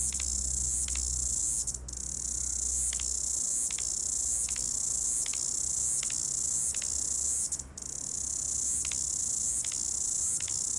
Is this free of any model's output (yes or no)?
yes